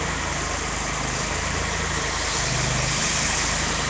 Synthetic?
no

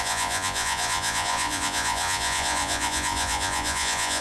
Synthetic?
yes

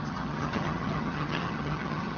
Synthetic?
yes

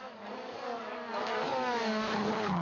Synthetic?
yes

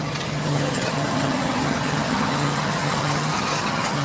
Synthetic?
yes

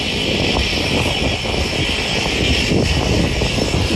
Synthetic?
no